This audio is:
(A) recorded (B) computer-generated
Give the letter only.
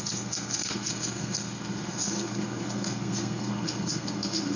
B